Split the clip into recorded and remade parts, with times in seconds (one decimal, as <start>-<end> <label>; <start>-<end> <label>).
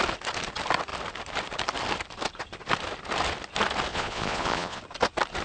0.0-3.9 recorded; 3.9-4.8 remade; 4.8-5.4 recorded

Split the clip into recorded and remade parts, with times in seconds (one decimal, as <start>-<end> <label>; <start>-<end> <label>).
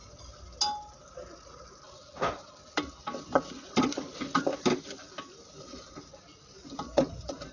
0.0-7.5 recorded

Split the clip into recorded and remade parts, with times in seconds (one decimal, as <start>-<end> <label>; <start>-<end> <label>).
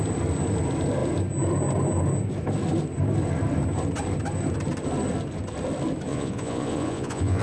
0.0-6.1 recorded; 6.1-7.4 remade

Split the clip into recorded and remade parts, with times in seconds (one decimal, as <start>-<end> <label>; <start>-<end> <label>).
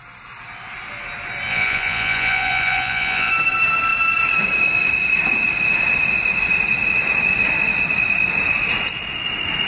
0.0-1.5 recorded; 1.5-3.3 remade; 3.3-9.7 recorded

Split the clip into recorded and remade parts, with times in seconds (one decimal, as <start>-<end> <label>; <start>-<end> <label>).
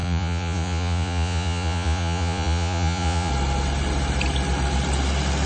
0.0-3.3 remade; 3.3-5.5 recorded